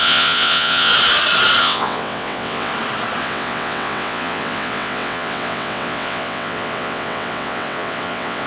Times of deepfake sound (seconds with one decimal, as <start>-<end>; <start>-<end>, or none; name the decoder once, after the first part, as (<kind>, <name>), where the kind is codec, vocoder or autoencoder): 0.0-0.9 (vocoder, WaveNeXt); 1.6-2.7; 3.2-8.5